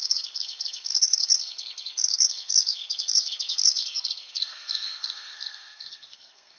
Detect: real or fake fake